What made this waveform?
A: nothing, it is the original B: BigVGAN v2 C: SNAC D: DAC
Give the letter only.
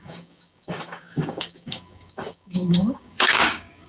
D